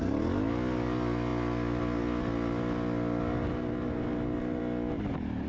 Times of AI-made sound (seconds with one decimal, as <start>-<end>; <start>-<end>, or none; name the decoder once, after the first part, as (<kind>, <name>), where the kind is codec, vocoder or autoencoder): none